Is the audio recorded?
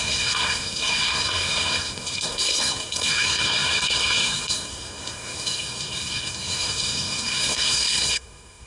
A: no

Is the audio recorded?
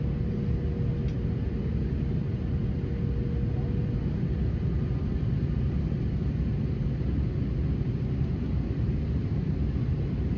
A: yes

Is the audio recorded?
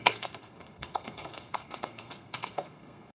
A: no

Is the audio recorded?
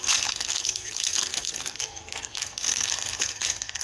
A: no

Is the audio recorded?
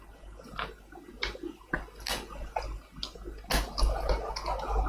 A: yes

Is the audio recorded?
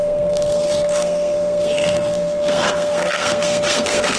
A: no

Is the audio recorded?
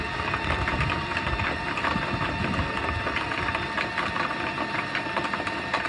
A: yes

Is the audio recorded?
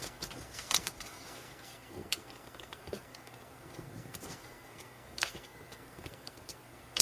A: no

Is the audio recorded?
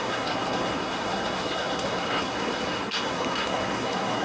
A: no